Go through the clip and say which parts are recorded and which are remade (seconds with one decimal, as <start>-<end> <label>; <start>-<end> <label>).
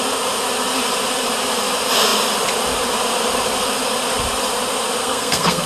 0.0-5.0 recorded; 5.0-5.7 remade